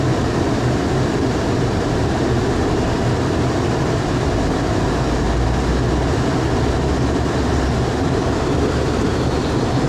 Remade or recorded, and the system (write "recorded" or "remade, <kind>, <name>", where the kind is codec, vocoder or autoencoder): recorded